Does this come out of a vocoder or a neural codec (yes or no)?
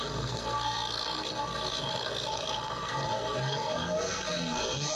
yes